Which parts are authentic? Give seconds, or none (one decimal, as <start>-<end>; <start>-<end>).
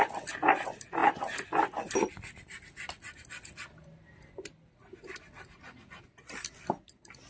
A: 0.0-7.3